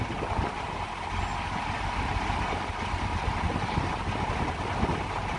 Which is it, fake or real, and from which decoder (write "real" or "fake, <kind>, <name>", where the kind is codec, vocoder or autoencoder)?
real